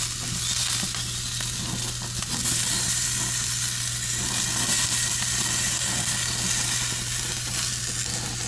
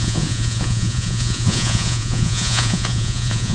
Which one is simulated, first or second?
second